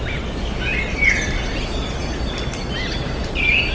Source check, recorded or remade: recorded